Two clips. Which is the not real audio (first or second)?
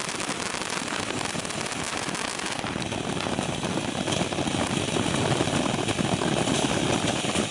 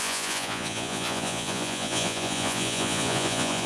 second